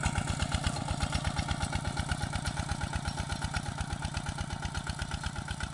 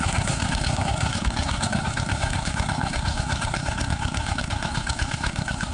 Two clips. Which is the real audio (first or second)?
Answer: first